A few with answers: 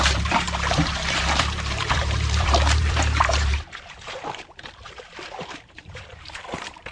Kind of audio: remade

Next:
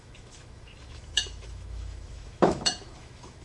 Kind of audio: remade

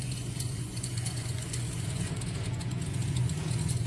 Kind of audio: remade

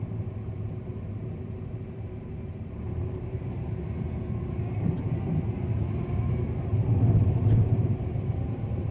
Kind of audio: remade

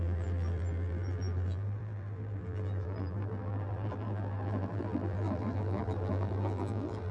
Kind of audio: remade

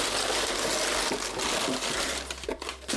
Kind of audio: recorded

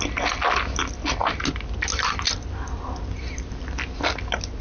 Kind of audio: recorded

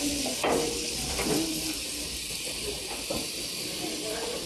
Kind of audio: remade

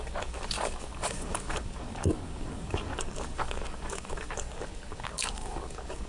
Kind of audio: remade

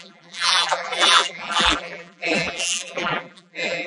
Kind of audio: remade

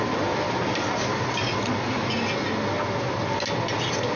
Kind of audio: recorded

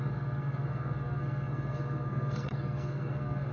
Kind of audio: remade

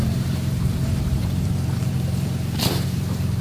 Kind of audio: remade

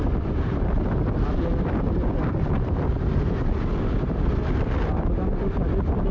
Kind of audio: recorded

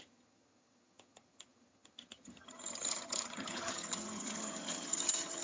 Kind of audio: remade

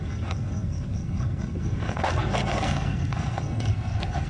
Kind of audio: remade